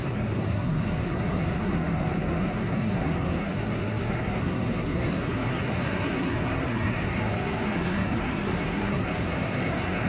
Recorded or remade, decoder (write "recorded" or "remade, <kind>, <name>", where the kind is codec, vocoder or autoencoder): remade, codec, SNAC